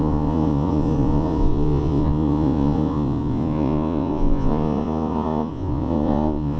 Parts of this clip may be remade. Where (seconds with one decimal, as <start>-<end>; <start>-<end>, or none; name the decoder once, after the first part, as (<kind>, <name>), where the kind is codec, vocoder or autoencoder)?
0.0-6.6 (vocoder, Vocos)